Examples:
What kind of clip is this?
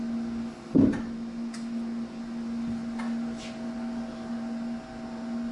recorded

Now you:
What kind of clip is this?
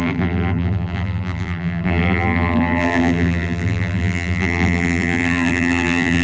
remade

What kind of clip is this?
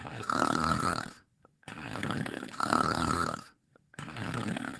remade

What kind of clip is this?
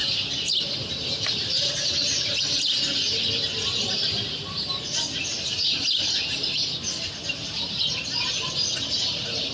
recorded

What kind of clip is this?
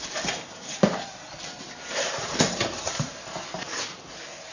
recorded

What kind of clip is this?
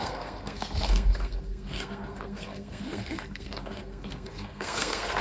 remade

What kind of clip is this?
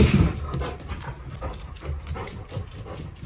remade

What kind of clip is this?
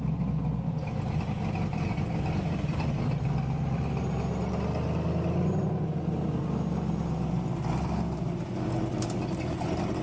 recorded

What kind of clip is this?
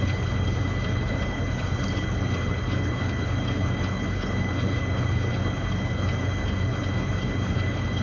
remade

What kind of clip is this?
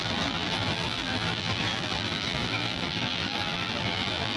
remade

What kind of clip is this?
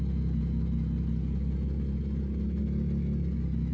recorded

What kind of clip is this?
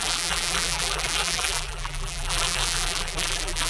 remade